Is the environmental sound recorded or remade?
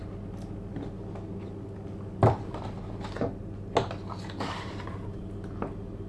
recorded